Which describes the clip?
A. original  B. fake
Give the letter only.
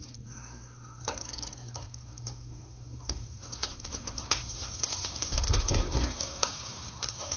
B